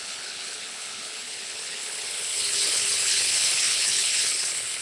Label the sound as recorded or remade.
remade